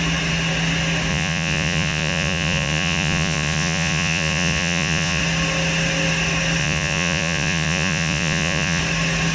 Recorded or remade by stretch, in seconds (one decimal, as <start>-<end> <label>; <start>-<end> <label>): 0.0-1.1 recorded; 1.1-5.2 remade; 5.2-6.6 recorded; 6.6-8.8 remade; 8.8-9.3 recorded